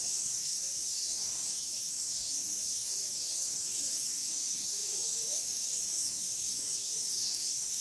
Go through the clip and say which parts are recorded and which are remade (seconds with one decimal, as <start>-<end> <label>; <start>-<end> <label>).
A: 0.0-7.8 remade